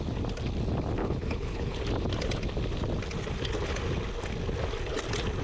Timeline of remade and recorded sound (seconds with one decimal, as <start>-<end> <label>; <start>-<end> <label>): 0.0-1.0 recorded; 1.0-1.8 remade; 1.8-5.4 recorded